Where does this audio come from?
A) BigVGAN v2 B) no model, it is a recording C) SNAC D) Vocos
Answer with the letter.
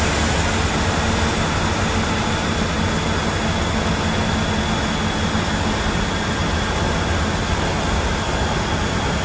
B